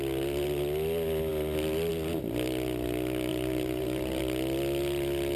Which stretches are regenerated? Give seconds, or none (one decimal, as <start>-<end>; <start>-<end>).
3.3-4.2